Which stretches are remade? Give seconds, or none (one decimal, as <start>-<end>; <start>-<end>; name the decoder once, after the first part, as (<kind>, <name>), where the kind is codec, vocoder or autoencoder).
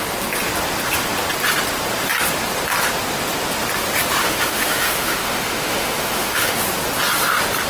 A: 4.2-6.6 (autoencoder, DAC-VAE)